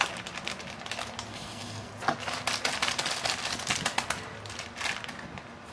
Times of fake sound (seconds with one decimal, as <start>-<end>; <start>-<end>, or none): 1.3-1.9

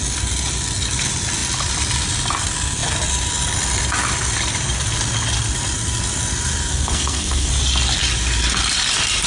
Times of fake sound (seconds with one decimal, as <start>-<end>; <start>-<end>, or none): 6.7-7.5

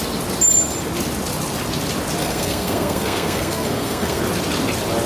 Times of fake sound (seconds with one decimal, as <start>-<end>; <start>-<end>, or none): 2.2-4.2

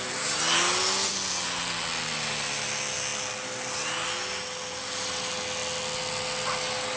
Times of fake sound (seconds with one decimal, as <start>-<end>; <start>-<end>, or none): none

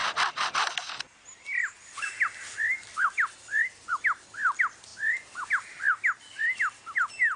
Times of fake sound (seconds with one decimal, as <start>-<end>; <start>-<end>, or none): none

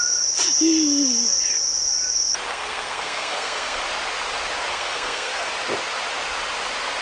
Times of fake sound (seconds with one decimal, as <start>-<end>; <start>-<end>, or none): 2.5-3.8; 4.7-5.5